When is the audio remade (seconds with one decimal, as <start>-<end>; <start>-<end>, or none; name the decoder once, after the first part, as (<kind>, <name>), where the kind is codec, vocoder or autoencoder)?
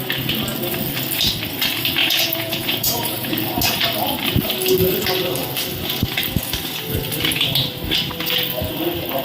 2.0-3.3 (vocoder, Vocos)